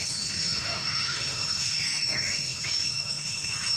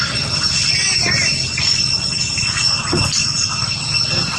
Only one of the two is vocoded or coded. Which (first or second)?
first